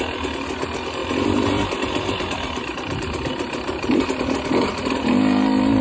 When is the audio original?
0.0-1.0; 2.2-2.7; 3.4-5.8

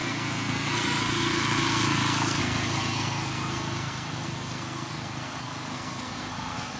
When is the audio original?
none

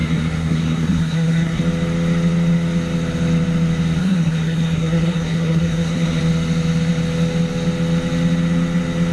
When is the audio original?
1.6-4.0; 6.2-9.1